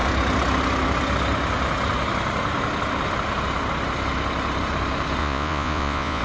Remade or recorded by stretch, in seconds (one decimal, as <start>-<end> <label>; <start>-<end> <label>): 0.0-5.2 recorded; 5.2-6.2 remade